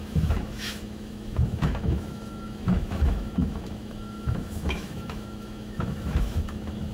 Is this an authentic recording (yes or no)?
no